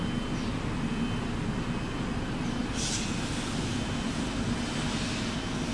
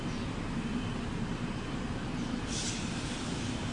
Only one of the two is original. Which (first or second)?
first